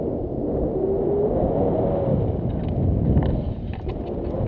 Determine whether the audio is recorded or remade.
recorded